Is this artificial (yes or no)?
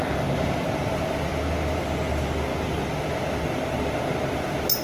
no